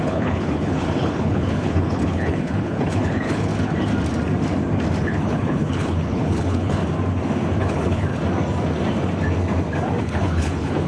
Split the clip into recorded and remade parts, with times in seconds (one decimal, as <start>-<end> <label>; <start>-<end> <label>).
0.0-3.5 remade; 3.5-5.0 recorded; 5.0-6.8 remade; 6.8-7.6 recorded; 7.6-8.1 remade; 8.1-10.0 recorded; 10.0-10.9 remade